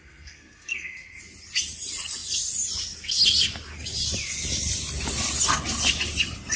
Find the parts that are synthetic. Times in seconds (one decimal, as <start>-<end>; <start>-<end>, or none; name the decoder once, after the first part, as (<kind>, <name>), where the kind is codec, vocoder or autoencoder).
0.0-1.2 (codec, SNAC)